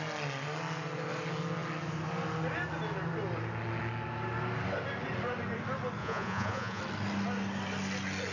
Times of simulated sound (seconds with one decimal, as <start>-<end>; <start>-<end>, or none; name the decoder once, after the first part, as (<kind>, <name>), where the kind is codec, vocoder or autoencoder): 6.0-6.8 (vocoder, Vocos)